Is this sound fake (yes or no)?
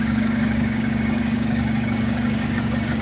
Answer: yes